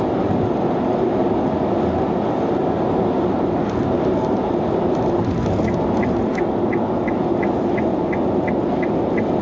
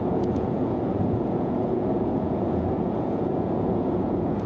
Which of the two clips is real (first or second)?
first